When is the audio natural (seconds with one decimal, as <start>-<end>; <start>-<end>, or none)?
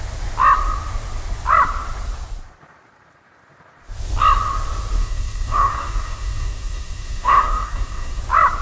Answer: 0.0-5.0; 8.2-8.6